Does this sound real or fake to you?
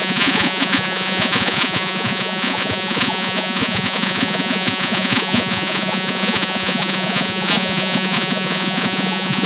fake